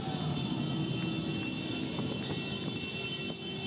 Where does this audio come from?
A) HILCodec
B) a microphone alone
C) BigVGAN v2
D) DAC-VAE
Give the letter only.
B